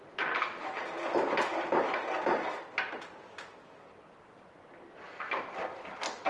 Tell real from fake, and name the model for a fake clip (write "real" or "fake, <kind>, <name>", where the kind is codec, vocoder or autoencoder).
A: real